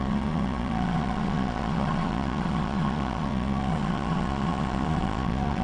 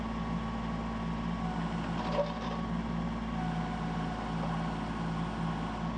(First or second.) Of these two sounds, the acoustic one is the second